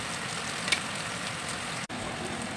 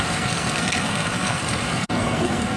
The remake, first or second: second